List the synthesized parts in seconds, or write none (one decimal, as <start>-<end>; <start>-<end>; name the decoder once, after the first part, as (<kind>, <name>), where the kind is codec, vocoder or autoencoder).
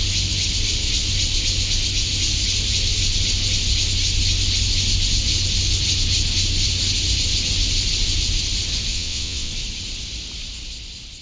8.9-9.5 (vocoder, WaveNeXt)